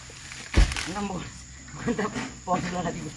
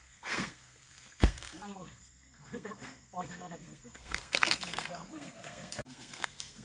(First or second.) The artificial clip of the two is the second